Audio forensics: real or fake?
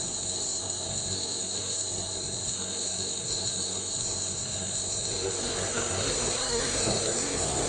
fake